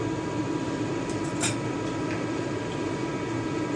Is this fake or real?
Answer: real